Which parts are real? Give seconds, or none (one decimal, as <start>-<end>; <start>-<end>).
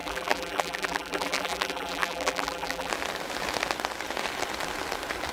2.9-5.3